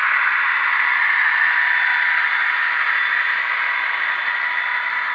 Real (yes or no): yes